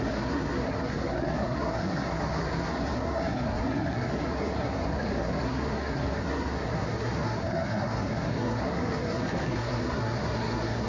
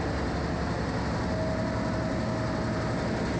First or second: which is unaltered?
second